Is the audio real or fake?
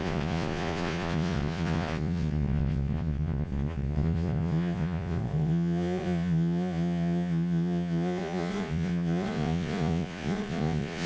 fake